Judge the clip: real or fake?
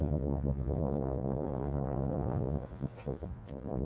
fake